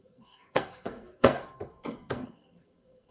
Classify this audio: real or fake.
fake